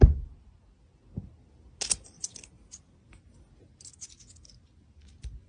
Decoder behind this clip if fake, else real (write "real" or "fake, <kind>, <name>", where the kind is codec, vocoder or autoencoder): real